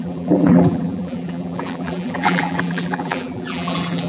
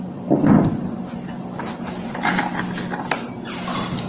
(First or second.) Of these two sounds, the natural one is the second